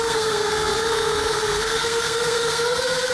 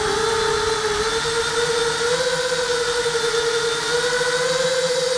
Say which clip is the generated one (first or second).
first